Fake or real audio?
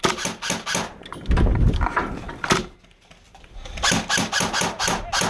real